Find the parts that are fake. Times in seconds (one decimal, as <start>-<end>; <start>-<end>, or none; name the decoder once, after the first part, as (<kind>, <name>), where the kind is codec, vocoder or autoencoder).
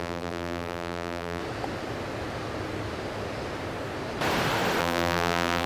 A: 0.0-1.4 (vocoder, BigVGAN v2); 4.8-5.7